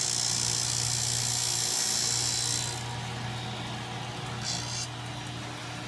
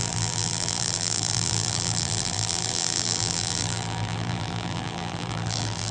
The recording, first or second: first